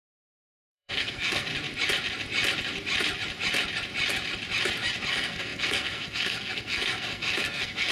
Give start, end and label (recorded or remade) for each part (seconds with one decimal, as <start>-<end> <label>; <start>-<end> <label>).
0.0-1.5 remade; 1.5-5.1 recorded; 5.1-7.9 remade